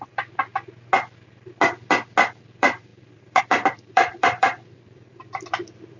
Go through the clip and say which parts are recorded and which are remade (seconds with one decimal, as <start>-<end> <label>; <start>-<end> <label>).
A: 0.0-0.5 remade; 0.5-2.4 recorded; 2.4-6.0 remade